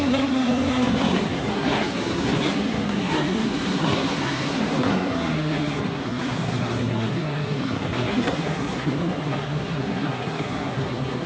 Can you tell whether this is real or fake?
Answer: fake